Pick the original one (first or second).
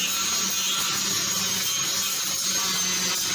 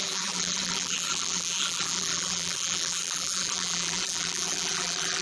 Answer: first